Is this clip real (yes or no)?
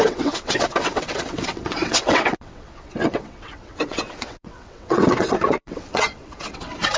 no